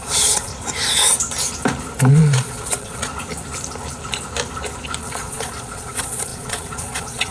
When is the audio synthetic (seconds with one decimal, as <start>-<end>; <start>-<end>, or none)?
0.0-0.5; 2.1-3.1; 5.0-7.3